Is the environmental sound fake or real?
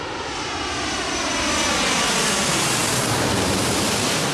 real